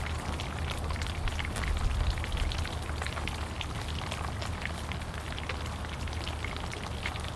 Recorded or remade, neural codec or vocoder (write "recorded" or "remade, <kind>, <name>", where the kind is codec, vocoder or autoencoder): recorded